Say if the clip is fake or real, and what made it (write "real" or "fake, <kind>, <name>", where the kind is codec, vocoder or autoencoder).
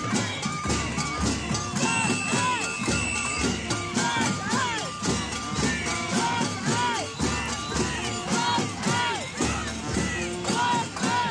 real